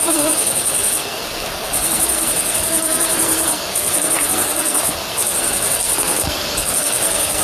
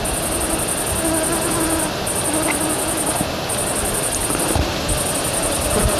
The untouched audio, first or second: second